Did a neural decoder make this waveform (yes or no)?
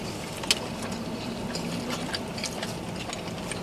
no